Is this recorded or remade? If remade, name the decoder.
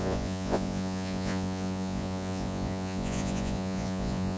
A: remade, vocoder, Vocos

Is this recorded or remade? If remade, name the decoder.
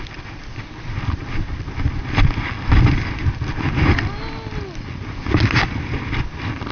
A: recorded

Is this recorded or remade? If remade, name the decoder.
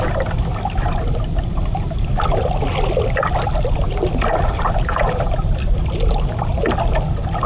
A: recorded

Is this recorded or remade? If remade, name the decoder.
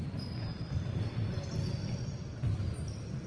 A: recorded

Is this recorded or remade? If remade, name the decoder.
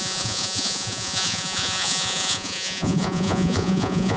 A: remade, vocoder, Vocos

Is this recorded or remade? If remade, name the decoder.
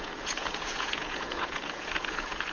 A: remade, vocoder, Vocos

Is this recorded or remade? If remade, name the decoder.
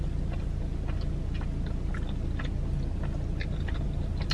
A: recorded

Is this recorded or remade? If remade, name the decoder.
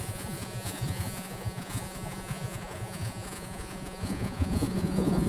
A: remade, vocoder, Vocos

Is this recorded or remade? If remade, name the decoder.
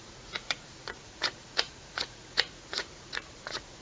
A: remade, vocoder, Vocos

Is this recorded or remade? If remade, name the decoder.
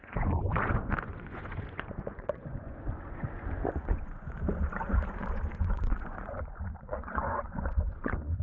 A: remade, vocoder, Vocos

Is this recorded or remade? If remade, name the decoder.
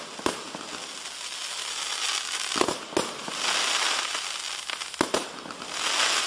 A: recorded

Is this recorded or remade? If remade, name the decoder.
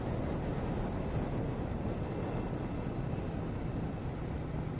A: recorded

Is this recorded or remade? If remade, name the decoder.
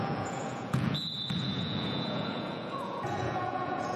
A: remade, vocoder, Vocos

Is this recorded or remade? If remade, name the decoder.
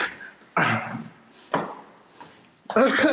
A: recorded